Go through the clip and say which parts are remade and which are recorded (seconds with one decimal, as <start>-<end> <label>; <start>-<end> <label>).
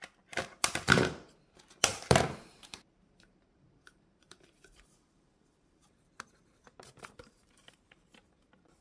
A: 0.0-8.8 remade